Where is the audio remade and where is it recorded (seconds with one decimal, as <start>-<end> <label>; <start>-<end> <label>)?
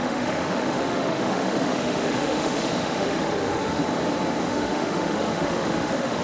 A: 0.0-3.8 remade; 3.8-4.4 recorded; 4.4-6.2 remade